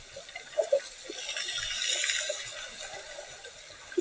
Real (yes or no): yes